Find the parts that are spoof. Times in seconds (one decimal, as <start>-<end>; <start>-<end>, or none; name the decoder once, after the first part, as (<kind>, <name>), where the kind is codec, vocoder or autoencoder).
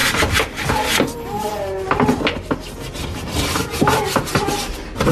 none